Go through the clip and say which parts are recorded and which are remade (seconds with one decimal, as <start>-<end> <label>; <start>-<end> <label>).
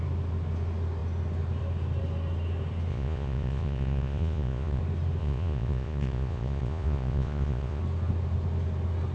0.0-2.9 recorded; 2.9-4.8 remade; 4.8-5.2 recorded; 5.2-7.8 remade; 7.8-9.1 recorded